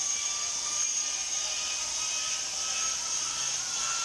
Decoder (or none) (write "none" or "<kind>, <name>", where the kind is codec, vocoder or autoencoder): none